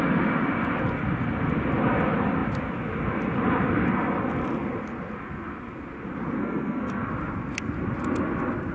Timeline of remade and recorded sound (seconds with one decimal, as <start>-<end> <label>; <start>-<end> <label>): 0.0-6.4 recorded; 6.4-7.1 remade; 7.1-8.7 recorded